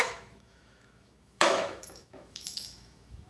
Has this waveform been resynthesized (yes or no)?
yes